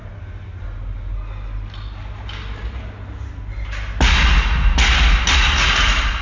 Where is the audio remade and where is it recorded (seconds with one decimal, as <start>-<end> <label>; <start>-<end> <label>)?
0.0-6.2 recorded